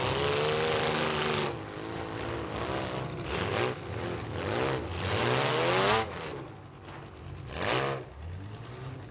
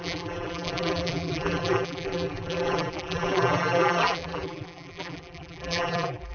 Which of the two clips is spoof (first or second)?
second